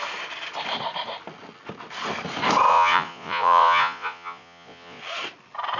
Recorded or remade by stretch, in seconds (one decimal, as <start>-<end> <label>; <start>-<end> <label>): 0.0-2.7 recorded; 2.7-5.0 remade; 5.0-5.8 recorded